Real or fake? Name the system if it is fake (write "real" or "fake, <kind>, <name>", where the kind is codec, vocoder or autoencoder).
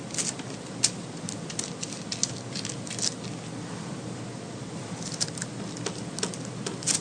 real